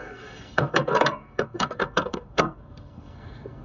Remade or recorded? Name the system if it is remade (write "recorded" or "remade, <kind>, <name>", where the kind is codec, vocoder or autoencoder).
remade, codec, SNAC